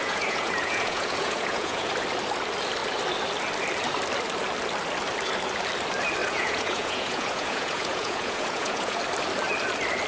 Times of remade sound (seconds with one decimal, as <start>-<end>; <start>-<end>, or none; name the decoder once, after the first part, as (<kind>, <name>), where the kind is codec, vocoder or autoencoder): 0.0-1.9 (vocoder, Vocos); 6.2-9.0